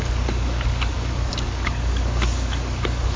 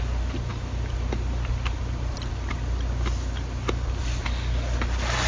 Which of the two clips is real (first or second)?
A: second